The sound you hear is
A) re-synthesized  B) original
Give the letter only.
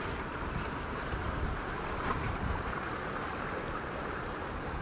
A